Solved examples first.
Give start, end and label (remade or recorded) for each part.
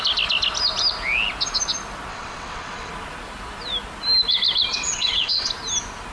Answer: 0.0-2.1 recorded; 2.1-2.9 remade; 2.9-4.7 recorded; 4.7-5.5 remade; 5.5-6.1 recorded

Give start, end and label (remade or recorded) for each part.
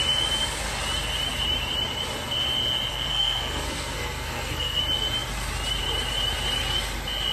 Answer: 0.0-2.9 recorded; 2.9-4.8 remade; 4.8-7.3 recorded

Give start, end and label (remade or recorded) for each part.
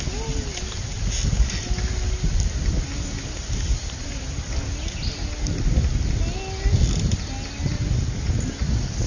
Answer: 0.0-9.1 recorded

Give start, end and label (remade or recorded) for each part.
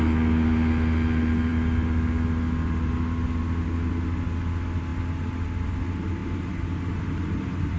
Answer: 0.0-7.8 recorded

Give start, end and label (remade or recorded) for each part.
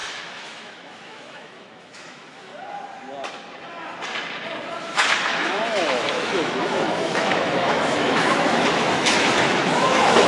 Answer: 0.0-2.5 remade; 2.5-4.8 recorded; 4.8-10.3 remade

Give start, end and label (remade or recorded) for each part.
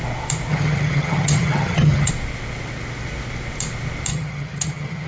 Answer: 0.0-0.5 recorded; 0.5-2.1 remade; 2.1-4.1 recorded; 4.1-5.1 remade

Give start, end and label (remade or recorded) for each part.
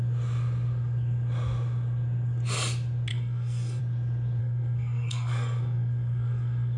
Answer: 0.0-3.1 recorded; 3.1-3.8 remade; 3.8-4.4 recorded; 4.4-6.8 remade